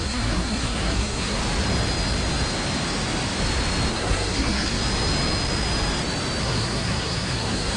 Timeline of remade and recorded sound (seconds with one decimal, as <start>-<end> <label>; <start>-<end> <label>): 0.0-1.4 remade; 1.4-3.9 recorded; 3.9-4.8 remade; 4.8-6.4 recorded; 6.4-7.8 remade